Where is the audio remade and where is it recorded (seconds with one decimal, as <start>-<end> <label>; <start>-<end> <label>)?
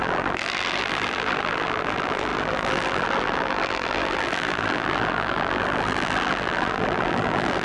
0.0-7.6 remade